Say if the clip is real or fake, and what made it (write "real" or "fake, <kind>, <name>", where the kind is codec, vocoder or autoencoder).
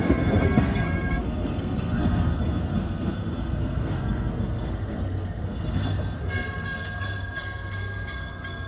fake, codec, SNAC